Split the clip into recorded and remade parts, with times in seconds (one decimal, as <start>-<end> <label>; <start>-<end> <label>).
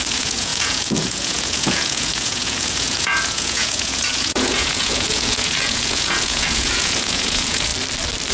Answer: 0.0-7.7 remade; 7.7-8.3 recorded